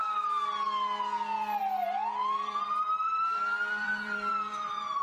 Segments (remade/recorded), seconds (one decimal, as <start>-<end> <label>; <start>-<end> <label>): 0.0-1.6 recorded; 1.6-5.0 remade